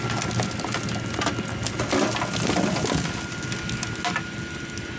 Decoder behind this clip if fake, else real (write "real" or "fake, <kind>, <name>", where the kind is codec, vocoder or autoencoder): real